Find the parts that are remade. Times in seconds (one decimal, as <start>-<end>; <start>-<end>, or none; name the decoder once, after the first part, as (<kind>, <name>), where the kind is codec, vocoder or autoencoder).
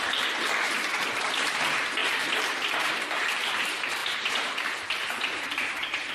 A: 2.0-3.6 (vocoder, BigVGAN v2); 4.0-6.1